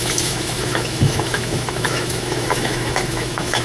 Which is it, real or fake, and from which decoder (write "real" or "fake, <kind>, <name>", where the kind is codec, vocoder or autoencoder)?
fake, autoencoder, DAC-VAE